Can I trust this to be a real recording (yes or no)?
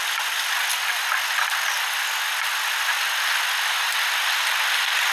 yes